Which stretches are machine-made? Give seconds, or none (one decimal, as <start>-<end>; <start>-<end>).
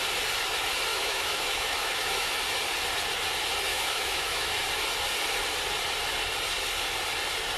0.9-2.3; 3.7-4.5